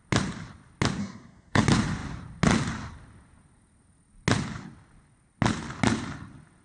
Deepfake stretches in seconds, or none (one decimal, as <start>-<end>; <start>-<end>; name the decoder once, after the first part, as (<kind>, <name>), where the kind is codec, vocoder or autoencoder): 1.0-1.6 (codec, SNAC)